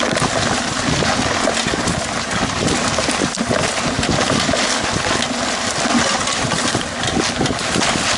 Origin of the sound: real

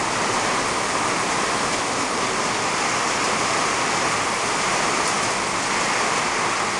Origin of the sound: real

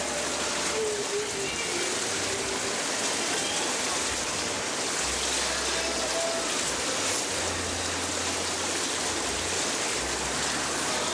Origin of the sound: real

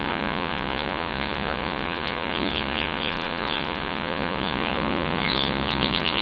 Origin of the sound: fake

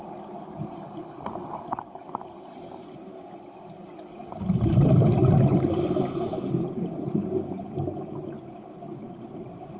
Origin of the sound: real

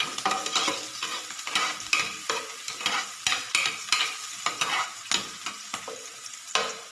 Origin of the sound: real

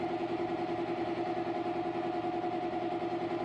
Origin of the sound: real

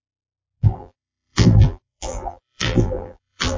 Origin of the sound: fake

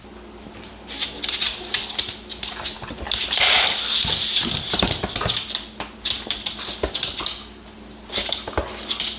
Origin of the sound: real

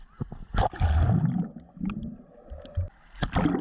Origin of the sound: real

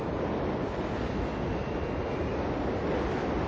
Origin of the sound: real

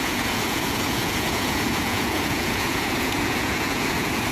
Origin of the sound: fake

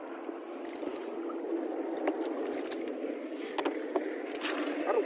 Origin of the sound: real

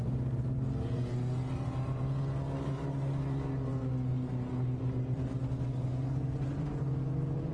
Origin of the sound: real